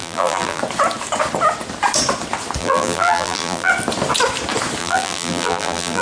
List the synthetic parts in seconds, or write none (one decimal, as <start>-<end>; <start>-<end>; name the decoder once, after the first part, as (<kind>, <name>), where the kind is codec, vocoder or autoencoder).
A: 0.0-0.6 (vocoder, BigVGAN v2); 2.6-3.7; 4.8-6.0